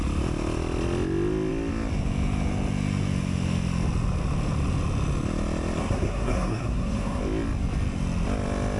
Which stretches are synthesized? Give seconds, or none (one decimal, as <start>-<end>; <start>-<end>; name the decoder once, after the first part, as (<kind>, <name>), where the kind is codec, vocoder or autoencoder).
5.8-7.2 (codec, SNAC)